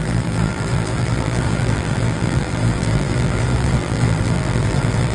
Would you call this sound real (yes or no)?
no